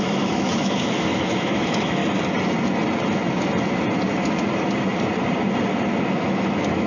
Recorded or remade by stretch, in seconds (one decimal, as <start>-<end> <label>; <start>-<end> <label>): 0.0-2.0 remade; 2.0-6.1 recorded; 6.1-6.9 remade